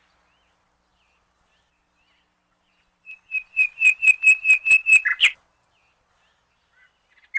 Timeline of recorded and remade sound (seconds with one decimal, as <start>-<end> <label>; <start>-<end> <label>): 0.0-0.9 recorded; 0.9-4.1 remade; 4.1-7.4 recorded